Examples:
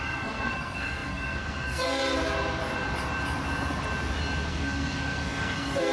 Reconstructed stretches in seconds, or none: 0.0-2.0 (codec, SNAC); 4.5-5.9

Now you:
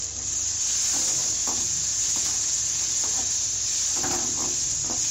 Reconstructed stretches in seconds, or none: 1.4-3.2 (vocoder, Vocos)

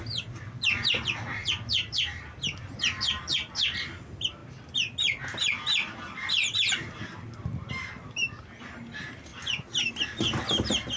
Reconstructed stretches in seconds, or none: none

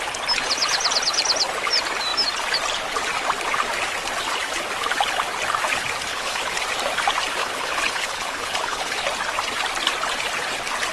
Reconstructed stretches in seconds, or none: 6.1-6.6 (codec, HILCodec); 7.4-9.0

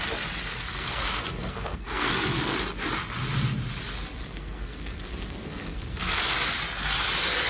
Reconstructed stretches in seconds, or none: 0.5-2.6 (codec, SNAC); 4.2-6.2